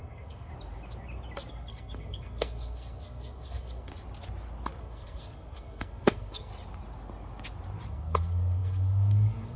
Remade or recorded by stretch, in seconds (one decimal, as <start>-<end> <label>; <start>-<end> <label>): 0.0-0.5 remade; 0.5-1.5 recorded; 1.5-3.9 remade; 3.9-4.8 recorded; 4.8-6.5 remade; 6.5-7.9 recorded; 7.9-9.6 remade